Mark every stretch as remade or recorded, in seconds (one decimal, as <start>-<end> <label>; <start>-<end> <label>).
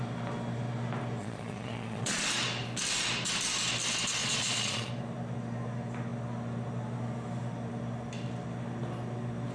0.0-1.2 recorded; 1.2-2.2 remade; 2.2-4.2 recorded; 4.2-4.9 remade; 4.9-9.5 recorded